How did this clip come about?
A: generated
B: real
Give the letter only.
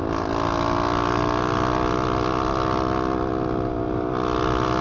B